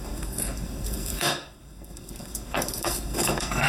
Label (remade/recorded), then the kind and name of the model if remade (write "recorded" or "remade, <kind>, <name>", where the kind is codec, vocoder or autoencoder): remade, codec, SNAC